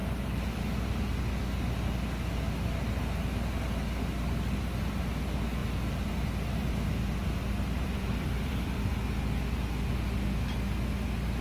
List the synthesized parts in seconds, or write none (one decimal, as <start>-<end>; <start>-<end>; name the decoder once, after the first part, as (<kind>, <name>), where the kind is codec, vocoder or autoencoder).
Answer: 7.2-8.9 (vocoder, BigVGAN v2)